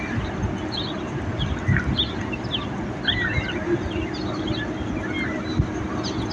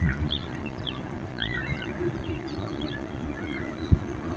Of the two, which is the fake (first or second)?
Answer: second